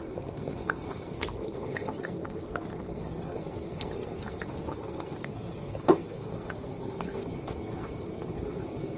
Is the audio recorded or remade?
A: remade